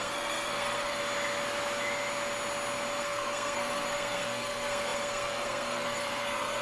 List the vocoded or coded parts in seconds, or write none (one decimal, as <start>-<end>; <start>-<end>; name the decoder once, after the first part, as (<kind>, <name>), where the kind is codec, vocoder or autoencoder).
0.0-1.0 (codec, SNAC); 3.0-6.6